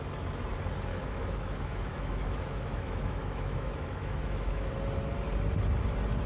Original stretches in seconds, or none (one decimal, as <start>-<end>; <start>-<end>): 0.0-0.9; 4.7-6.3